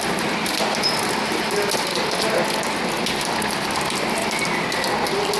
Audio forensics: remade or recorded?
recorded